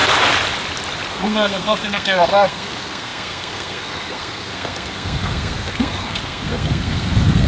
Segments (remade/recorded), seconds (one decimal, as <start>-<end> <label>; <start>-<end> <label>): 0.0-1.1 recorded; 1.1-7.5 remade